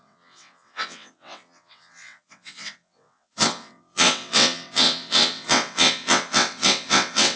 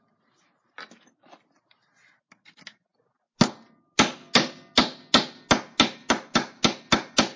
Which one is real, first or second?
second